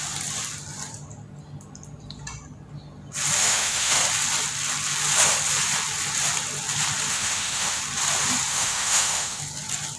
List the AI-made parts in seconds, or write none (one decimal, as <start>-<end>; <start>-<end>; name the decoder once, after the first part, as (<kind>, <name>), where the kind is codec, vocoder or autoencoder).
3.4-4.0 (autoencoder, DAC-VAE); 7.1-7.8; 8.5-9.4